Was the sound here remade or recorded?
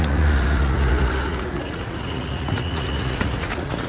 remade